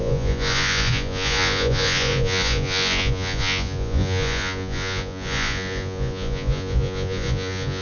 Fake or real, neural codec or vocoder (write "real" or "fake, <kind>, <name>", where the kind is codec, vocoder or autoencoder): fake, vocoder, Vocos